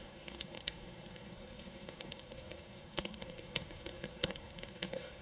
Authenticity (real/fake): fake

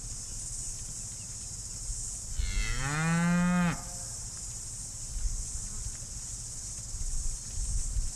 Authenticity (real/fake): real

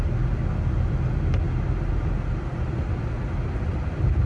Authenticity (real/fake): real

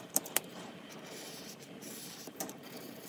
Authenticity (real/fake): fake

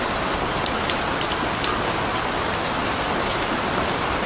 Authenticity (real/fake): real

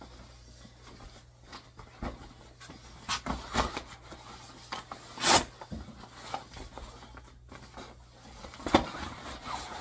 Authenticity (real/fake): real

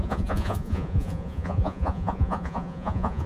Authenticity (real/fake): fake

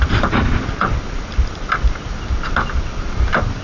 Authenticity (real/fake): real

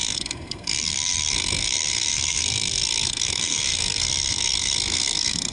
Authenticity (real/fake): fake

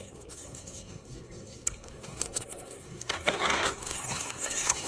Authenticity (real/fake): fake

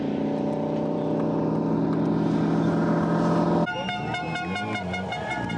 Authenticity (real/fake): real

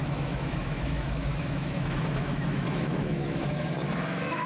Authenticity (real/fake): fake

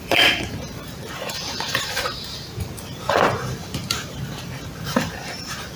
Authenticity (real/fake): fake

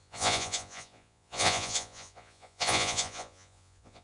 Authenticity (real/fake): fake